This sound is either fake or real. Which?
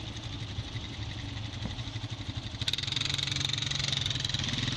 real